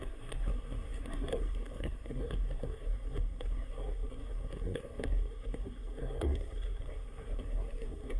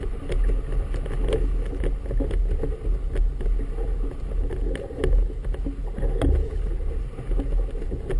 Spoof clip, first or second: first